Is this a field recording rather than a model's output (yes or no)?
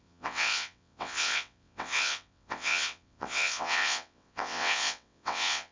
no